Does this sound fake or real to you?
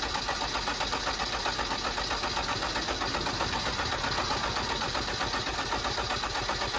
real